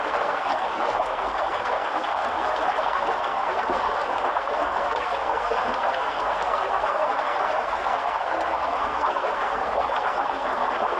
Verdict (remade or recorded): remade